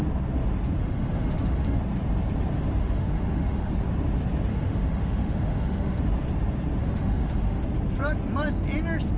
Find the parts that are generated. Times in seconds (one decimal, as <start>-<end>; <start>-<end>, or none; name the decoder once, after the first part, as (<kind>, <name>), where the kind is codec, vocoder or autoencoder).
0.8-1.8 (autoencoder, DAC-VAE); 2.8-3.7; 4.5-6.0; 6.8-7.6